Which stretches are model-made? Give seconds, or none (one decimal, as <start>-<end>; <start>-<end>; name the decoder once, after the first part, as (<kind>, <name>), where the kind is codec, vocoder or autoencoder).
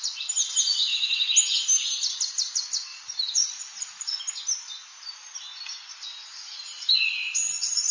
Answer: 2.9-4.2 (vocoder, Vocos)